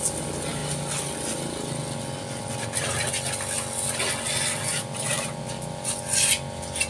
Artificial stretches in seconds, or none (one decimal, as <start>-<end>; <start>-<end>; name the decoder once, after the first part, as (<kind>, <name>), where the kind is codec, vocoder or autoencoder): none